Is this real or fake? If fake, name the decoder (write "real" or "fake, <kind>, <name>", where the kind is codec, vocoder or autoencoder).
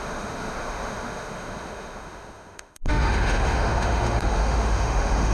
fake, autoencoder, DAC-VAE